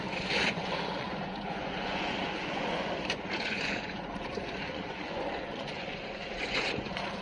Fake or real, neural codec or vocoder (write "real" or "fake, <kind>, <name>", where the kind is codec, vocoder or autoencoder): fake, vocoder, Vocos